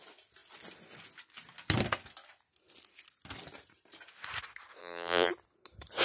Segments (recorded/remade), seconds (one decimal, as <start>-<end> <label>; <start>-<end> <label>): 0.0-4.8 recorded; 4.8-5.3 remade; 5.3-6.0 recorded